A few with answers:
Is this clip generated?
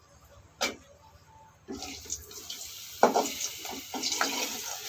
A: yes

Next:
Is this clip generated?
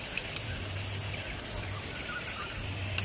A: no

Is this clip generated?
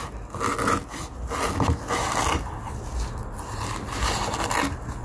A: no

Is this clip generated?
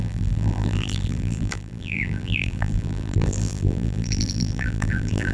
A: yes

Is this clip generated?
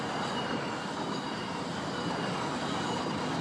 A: no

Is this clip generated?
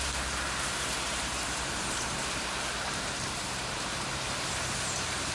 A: yes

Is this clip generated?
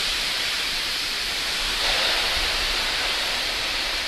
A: yes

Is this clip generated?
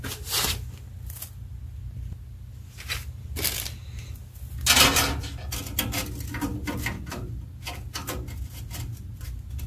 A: no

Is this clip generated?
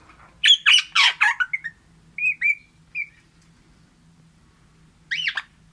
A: no